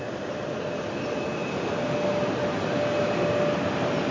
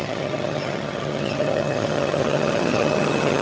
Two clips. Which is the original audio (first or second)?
first